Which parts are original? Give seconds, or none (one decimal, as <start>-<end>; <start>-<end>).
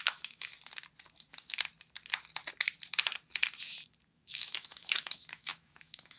0.5-4.1